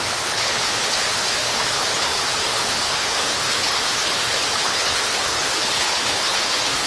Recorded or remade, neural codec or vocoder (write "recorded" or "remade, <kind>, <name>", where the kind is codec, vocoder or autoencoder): remade, codec, HILCodec